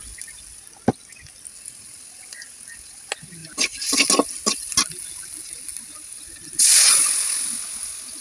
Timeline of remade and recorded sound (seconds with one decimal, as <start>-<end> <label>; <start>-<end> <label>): 0.0-8.2 recorded